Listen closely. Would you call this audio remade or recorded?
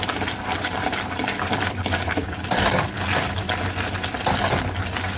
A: recorded